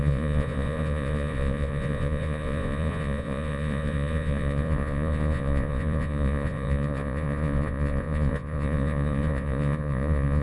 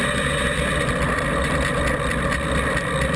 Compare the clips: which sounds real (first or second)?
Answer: second